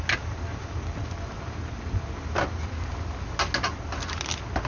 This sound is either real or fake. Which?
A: real